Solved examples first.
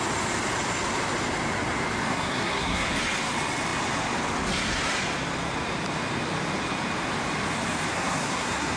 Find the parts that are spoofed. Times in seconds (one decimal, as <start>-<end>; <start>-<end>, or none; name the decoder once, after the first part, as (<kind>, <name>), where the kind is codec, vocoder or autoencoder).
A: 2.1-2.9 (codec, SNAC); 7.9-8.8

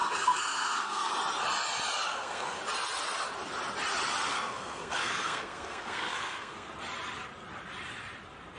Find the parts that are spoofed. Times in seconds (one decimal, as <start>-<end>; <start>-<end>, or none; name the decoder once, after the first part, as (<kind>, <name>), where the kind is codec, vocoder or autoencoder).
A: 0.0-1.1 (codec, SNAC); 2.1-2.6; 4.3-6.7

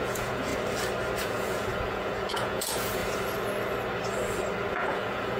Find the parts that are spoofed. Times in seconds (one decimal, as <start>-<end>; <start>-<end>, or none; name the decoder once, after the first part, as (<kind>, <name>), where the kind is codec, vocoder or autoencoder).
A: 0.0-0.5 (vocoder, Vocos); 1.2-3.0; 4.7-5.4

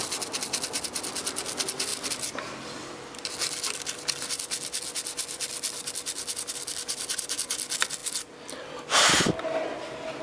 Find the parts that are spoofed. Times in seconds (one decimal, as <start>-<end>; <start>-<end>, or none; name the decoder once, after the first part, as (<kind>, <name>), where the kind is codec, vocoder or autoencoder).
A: none